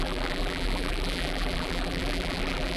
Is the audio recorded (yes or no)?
no